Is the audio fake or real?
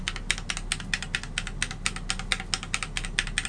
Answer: real